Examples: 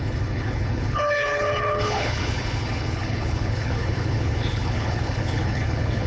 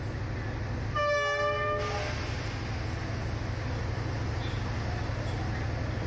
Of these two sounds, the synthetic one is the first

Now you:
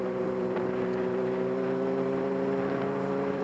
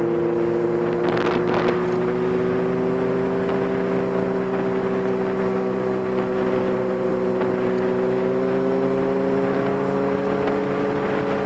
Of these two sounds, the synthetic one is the first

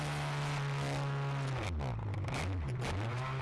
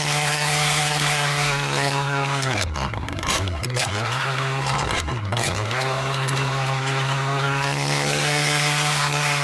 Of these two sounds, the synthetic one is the second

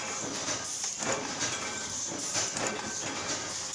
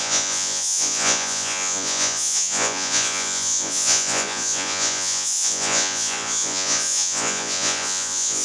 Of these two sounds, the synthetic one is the second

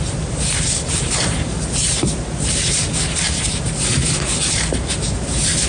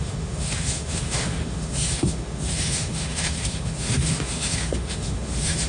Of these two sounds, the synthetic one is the second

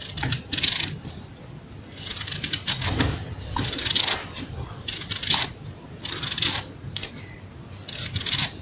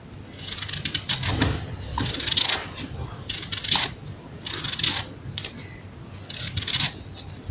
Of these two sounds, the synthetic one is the first